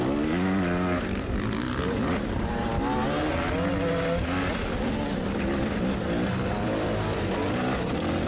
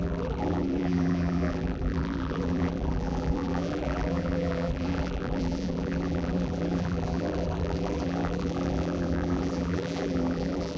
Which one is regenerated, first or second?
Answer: second